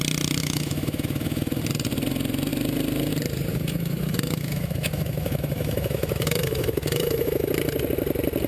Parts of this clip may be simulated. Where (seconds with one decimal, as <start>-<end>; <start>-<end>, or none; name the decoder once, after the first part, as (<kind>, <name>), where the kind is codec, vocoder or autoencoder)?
0.4-1.6 (autoencoder, DAC-VAE); 3.5-7.5